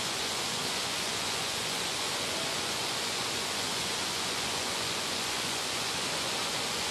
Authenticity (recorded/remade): remade